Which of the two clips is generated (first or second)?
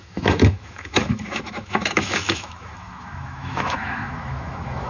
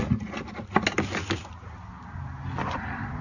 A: first